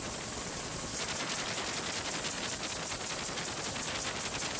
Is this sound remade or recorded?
recorded